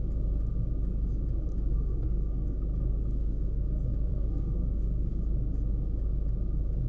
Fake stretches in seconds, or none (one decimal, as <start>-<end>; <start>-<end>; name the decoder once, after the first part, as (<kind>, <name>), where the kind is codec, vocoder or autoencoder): 1.7-5.2 (codec, SNAC)